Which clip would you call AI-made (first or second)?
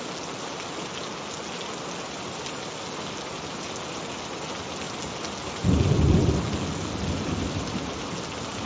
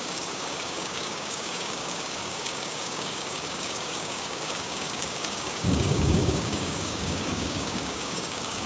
second